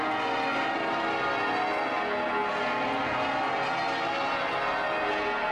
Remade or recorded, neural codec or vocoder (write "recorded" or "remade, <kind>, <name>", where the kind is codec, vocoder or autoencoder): recorded